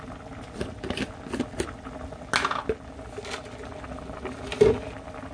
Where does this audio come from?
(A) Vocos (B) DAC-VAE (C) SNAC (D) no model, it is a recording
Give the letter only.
D